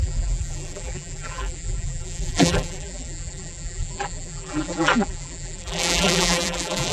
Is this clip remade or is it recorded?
remade